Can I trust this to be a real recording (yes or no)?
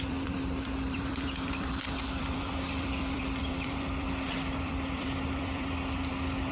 no